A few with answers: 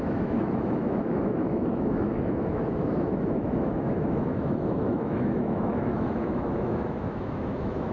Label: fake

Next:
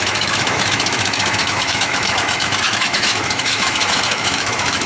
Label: fake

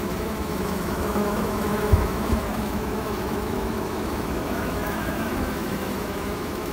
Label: fake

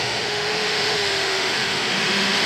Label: fake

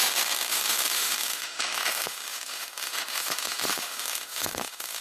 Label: fake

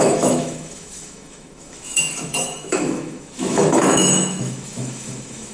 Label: fake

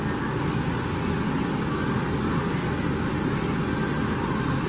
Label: real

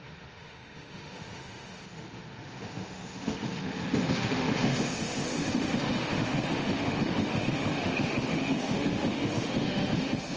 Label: fake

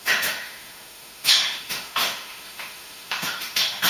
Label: fake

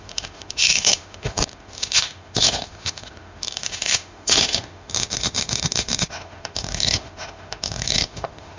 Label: fake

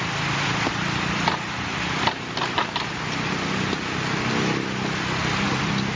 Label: real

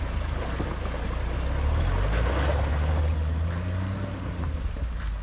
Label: real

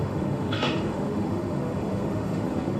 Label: fake